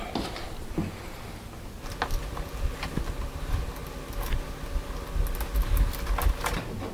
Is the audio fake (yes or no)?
no